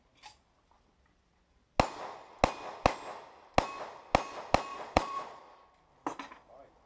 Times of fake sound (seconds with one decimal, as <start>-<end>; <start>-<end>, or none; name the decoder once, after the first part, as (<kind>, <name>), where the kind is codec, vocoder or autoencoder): 4.7-5.4 (vocoder, Vocos)